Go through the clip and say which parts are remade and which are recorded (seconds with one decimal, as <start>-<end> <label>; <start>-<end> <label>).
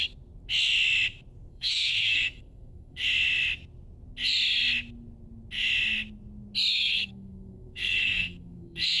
0.0-1.5 recorded; 1.5-3.0 remade; 3.0-6.7 recorded; 6.7-9.0 remade